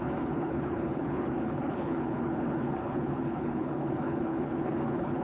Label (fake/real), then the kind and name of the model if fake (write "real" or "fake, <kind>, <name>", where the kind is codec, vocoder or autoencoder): fake, codec, HILCodec